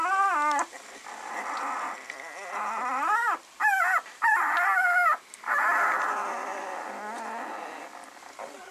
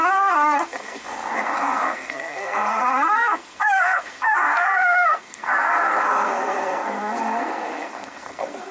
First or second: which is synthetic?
second